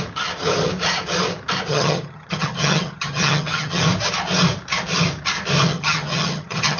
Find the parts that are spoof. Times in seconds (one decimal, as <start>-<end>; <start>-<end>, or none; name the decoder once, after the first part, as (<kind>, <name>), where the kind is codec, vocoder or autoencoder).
1.7-3.8 (vocoder, HiFi-GAN); 5.7-6.8